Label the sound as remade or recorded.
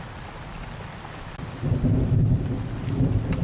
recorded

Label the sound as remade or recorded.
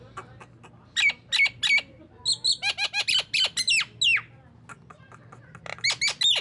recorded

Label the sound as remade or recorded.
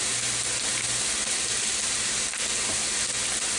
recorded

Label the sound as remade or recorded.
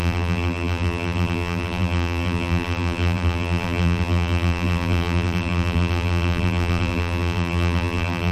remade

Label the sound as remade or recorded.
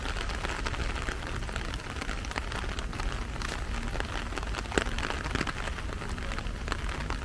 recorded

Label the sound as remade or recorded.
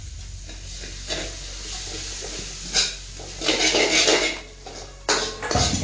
recorded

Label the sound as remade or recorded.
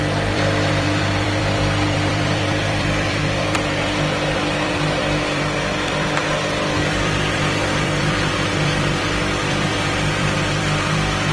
remade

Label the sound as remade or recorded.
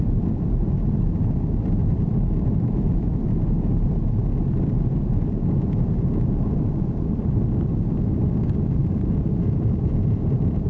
remade